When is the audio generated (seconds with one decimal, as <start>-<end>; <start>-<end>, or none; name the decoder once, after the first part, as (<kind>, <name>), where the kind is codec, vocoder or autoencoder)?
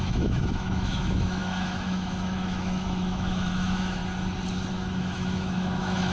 0.0-4.0 (autoencoder, DAC-VAE); 4.7-6.1